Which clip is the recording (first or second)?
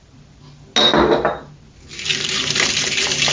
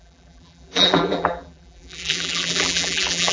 first